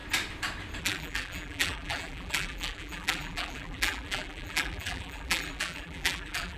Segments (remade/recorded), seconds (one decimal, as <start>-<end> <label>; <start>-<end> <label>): 0.0-0.8 recorded; 0.8-6.6 remade